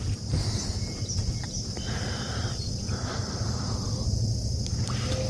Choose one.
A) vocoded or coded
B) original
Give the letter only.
B